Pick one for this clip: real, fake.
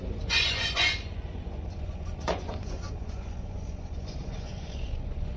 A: fake